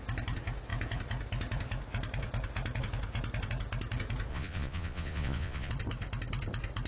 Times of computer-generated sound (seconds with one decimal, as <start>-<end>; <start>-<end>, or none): 4.3-5.7